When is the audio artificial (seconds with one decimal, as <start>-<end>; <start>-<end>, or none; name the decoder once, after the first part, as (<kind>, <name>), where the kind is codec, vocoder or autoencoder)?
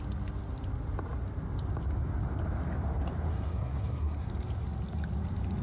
3.3-4.3 (codec, SNAC)